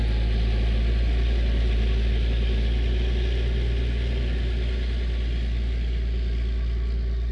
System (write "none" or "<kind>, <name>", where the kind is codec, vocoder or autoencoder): none